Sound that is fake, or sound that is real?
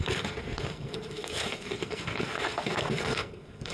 fake